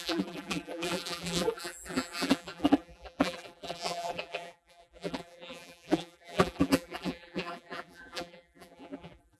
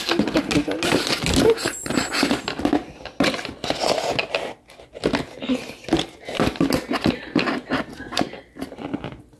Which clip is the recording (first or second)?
second